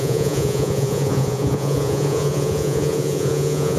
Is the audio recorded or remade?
remade